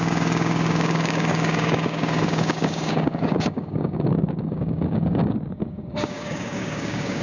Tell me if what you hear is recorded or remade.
remade